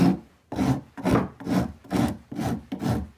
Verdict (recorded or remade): recorded